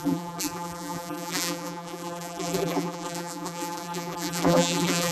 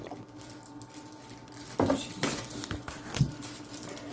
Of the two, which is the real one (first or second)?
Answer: second